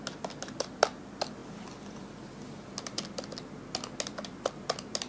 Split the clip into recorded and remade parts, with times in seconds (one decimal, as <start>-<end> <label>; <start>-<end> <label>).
0.0-5.1 recorded